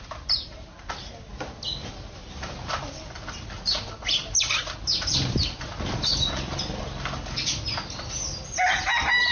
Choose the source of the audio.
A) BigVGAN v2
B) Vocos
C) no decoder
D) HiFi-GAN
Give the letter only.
C